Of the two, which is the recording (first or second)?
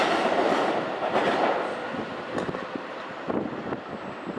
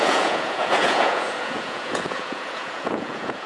first